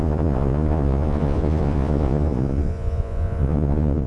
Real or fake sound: fake